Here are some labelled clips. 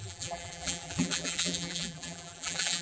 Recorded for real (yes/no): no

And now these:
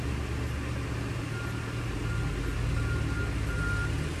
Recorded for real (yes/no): yes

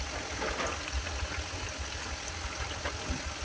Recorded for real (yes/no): yes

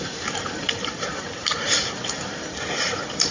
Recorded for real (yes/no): no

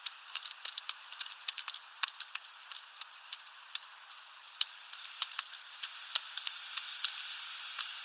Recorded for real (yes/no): yes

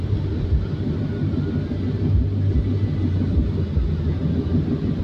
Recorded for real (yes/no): yes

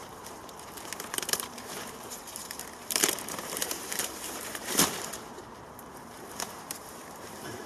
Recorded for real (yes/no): no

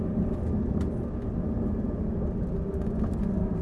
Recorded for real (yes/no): yes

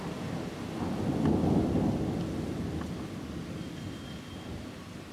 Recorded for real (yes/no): yes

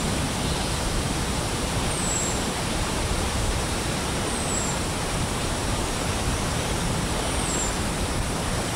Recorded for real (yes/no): no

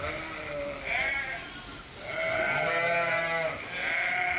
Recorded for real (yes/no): yes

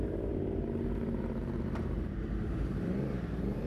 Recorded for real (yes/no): no